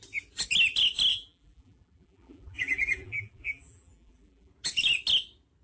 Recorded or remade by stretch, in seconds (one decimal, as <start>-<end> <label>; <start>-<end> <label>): 0.0-1.1 recorded; 1.1-4.5 remade; 4.5-5.6 recorded